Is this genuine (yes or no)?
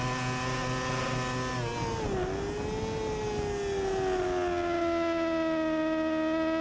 yes